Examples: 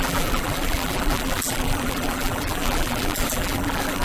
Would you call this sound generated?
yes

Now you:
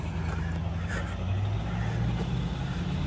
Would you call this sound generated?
no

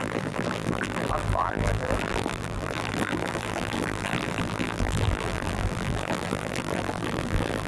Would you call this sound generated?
yes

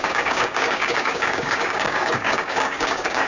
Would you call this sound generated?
yes